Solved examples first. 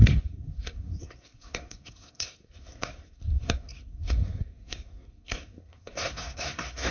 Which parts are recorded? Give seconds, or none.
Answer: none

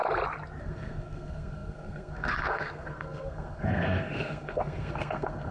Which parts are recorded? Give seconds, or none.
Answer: 0.0-0.6